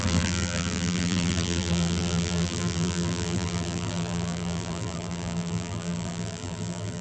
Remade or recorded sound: remade